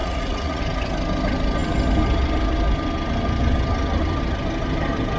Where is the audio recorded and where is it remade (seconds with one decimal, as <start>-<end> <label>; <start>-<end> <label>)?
0.0-0.6 remade; 0.6-5.2 recorded